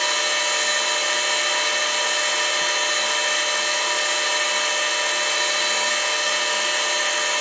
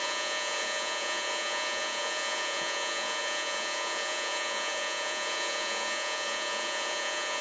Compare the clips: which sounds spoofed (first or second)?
second